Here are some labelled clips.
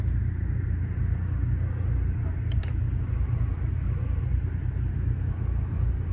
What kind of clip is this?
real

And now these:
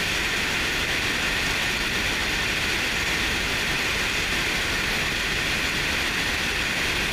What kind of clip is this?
real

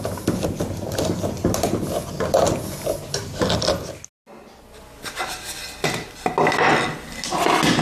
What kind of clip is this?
real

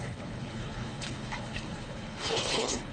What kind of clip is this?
fake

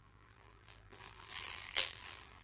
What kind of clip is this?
fake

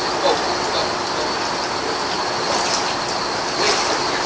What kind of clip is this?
real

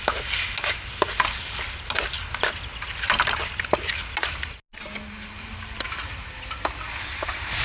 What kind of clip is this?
real